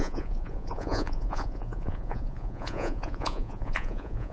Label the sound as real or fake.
fake